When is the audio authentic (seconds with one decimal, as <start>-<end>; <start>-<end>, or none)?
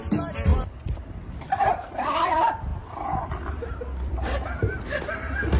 none